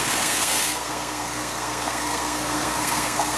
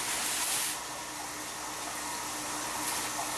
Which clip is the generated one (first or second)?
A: first